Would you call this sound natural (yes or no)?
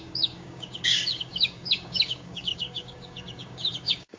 no